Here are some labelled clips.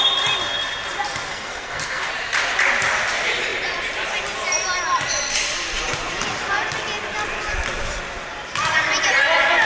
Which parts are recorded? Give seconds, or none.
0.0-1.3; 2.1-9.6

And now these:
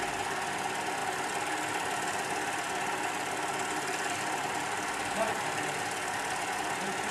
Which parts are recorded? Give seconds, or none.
0.0-7.1

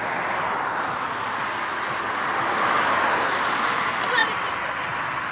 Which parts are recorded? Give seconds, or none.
0.0-5.3

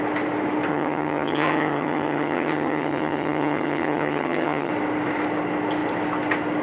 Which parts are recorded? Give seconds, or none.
0.0-0.7; 4.7-6.6

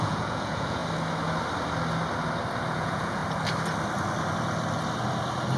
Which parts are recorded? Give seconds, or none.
0.8-2.7; 3.2-5.6